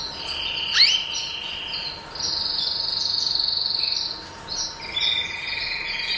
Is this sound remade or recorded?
recorded